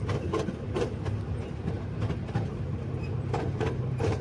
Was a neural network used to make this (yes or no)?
yes